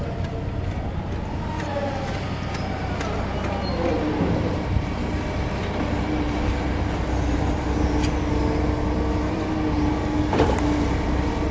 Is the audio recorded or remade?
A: recorded